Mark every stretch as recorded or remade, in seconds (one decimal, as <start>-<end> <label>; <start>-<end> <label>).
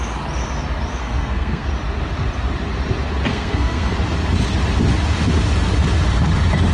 0.0-1.0 recorded; 1.0-1.7 remade; 1.7-3.3 recorded; 3.3-3.9 remade; 3.9-6.7 recorded